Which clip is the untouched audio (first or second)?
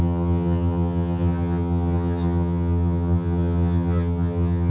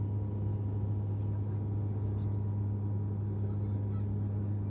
second